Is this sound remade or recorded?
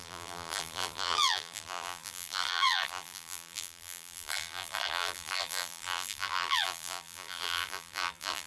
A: remade